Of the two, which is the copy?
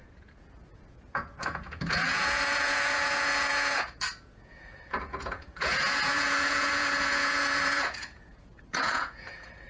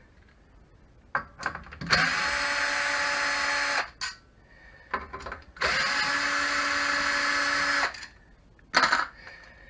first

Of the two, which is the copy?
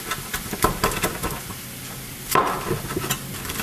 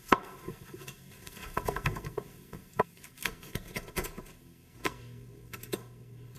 second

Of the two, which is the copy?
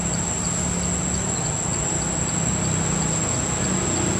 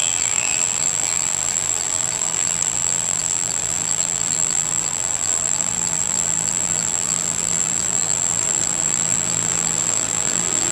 second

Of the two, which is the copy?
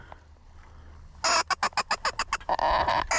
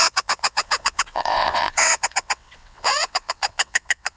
second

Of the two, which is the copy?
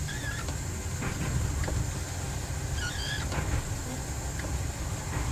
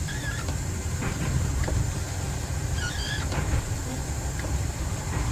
second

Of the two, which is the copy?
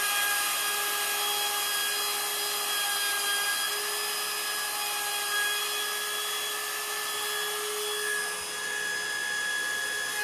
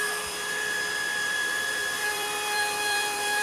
second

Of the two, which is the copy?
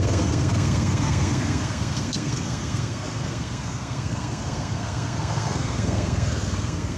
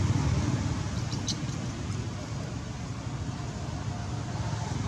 first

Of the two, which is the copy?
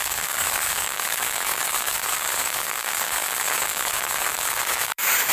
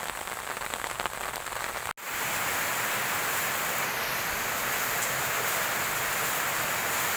first